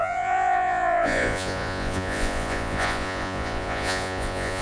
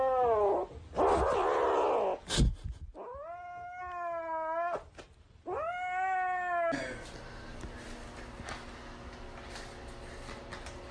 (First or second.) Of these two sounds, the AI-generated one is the first